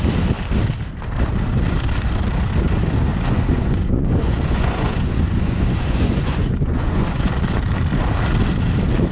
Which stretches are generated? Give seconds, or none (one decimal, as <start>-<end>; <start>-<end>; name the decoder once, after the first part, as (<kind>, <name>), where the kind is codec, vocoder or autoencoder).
3.1-7.3 (vocoder, Vocos)